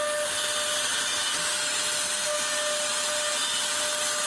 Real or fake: real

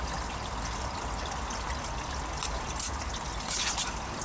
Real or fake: real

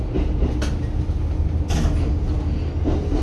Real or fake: real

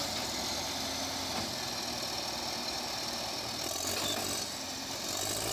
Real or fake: real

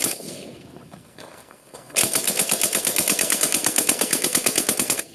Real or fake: fake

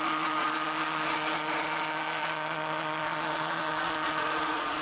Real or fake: fake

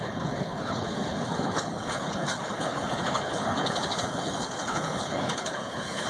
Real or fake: fake